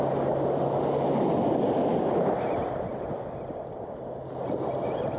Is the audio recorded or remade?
recorded